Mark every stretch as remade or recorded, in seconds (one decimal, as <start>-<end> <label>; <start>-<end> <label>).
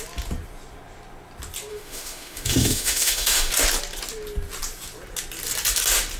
0.0-1.7 recorded; 1.7-3.5 remade; 3.5-6.2 recorded